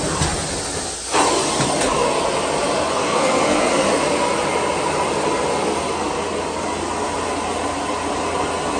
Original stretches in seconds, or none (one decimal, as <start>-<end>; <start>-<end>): 0.0-3.0; 3.7-8.8